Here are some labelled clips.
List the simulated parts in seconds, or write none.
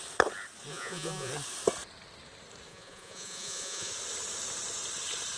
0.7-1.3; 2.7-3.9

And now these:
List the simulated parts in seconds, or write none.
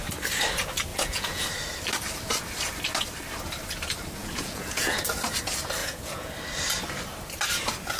0.9-1.4; 4.2-5.0; 5.8-6.3